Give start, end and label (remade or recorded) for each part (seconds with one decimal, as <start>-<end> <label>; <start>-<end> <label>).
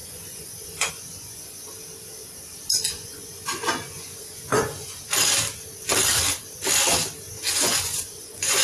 0.0-1.7 remade; 1.7-2.8 recorded; 2.8-5.0 remade; 5.0-7.5 recorded; 7.5-8.6 remade